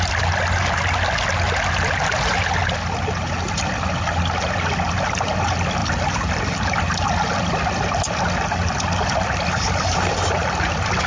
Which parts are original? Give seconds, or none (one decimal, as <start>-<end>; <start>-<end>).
0.0-11.1